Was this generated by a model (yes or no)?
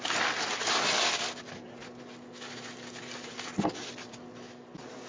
no